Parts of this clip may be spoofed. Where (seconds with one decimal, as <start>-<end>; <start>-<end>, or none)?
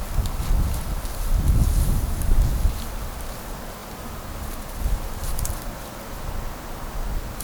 none